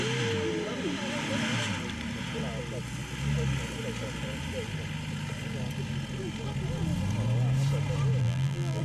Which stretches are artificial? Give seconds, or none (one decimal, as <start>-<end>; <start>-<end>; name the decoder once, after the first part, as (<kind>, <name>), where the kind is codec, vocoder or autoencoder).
8.2-8.8 (vocoder, BigVGAN v2)